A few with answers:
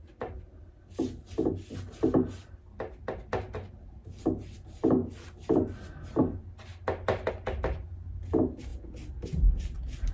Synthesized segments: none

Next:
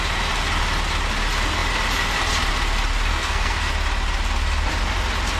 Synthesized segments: 3.1-3.7 (codec, SNAC)